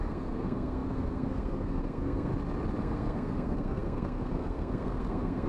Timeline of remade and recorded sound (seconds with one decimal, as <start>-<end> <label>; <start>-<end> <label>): 0.0-2.3 remade; 2.3-2.8 recorded; 2.8-5.5 remade